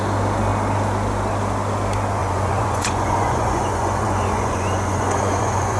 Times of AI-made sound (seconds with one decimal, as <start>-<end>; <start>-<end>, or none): 2.2-5.8